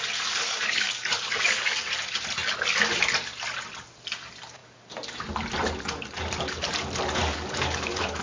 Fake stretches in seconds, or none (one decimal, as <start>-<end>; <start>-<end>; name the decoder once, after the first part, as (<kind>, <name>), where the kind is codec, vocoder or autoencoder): 0.4-1.9 (codec, DAC); 7.2-8.2